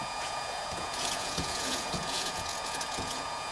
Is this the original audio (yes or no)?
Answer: no